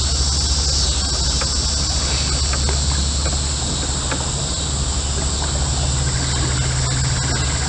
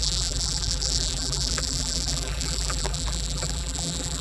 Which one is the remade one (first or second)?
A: second